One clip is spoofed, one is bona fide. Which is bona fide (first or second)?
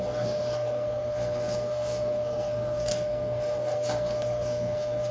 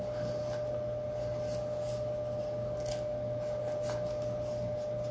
second